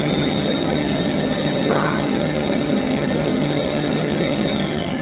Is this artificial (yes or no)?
yes